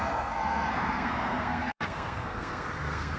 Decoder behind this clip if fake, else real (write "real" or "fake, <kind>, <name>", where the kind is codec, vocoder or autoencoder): fake, codec, SNAC